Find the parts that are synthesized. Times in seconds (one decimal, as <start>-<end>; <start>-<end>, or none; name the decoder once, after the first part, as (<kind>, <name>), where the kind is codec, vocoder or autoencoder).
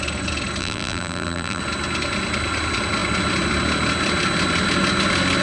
0.6-1.6 (vocoder, BigVGAN v2)